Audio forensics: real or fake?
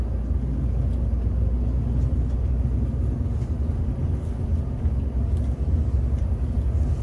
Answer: real